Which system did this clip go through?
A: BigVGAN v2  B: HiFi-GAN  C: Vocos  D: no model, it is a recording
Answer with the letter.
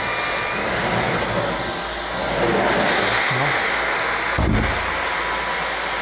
D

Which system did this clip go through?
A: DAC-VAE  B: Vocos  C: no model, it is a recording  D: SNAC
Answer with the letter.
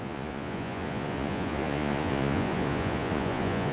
B